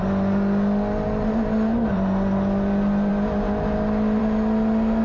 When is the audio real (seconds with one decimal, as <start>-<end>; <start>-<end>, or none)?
0.0-5.0